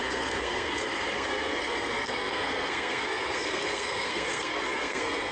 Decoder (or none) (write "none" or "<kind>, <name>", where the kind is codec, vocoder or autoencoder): codec, SNAC